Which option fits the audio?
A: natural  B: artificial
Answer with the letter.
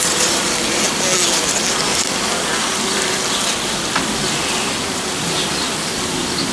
A